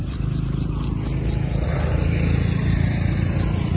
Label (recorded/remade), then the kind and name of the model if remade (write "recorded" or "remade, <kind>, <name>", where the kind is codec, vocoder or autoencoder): recorded